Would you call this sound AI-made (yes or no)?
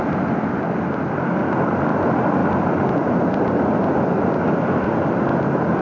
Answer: no